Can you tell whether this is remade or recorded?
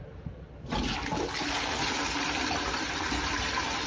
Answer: recorded